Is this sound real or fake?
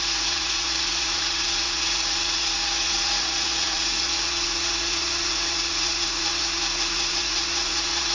fake